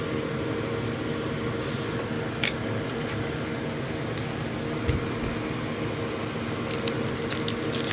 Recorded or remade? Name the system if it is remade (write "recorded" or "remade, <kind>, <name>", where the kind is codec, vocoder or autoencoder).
recorded